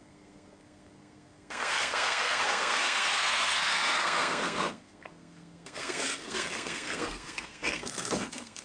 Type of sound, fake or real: fake